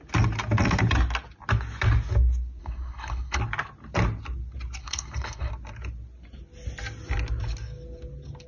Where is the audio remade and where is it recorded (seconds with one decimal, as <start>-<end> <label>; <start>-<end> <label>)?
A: 0.0-2.6 recorded; 2.6-3.4 remade; 3.4-4.8 recorded; 4.8-5.5 remade; 5.5-8.5 recorded